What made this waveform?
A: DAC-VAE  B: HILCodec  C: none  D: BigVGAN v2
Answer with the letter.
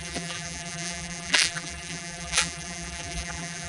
D